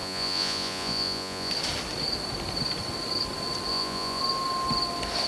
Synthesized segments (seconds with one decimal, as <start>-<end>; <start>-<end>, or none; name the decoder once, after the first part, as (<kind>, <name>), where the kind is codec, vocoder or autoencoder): 0.0-1.5 (vocoder, Vocos); 3.7-4.2